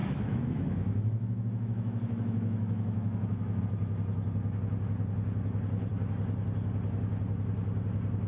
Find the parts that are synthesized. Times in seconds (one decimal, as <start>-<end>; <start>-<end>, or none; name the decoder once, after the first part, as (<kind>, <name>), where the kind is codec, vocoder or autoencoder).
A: 0.0-3.6 (autoencoder, DAC-VAE)